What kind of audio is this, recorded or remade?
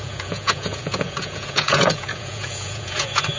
remade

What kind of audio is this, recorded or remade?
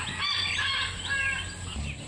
remade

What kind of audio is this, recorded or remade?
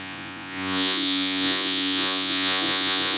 remade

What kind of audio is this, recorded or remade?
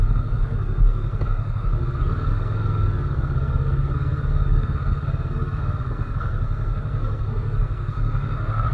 remade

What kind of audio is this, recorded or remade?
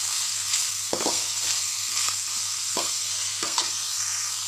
remade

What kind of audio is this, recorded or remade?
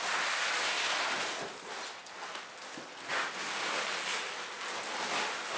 recorded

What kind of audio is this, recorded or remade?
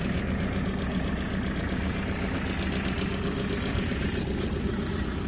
recorded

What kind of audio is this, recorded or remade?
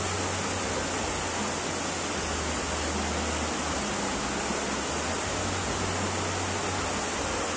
recorded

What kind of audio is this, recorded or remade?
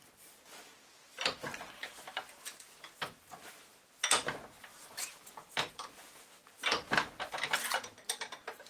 recorded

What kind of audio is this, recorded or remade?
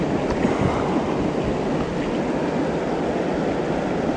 recorded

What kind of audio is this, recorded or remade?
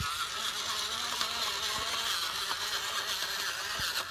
recorded